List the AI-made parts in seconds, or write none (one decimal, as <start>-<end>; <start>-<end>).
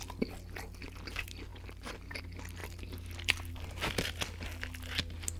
none